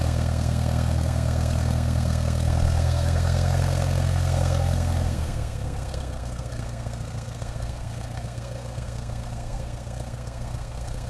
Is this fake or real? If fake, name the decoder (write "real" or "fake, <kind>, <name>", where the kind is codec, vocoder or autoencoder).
fake, codec, SNAC